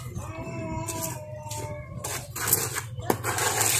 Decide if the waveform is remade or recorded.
recorded